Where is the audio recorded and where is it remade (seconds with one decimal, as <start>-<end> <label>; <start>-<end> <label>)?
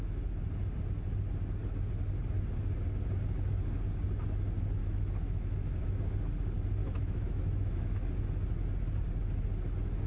0.0-4.8 recorded; 4.8-6.0 remade; 6.0-6.8 recorded; 6.8-8.1 remade; 8.1-10.1 recorded